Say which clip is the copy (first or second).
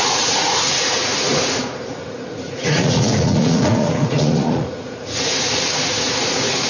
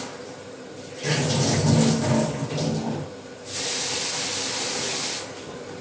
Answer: first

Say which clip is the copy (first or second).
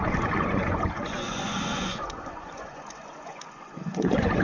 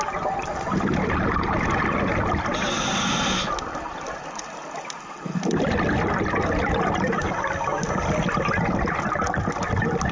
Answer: first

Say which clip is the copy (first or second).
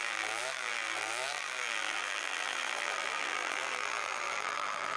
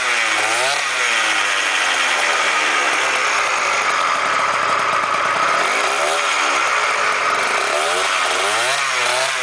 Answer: first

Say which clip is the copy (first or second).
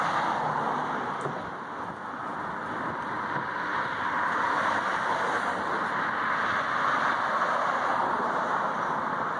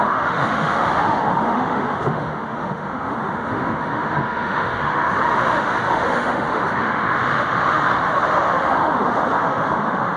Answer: second